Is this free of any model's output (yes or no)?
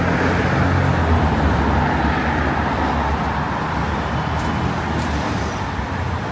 yes